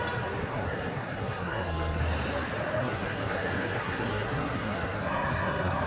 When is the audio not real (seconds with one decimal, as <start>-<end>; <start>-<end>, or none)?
0.4-2.0; 2.8-5.9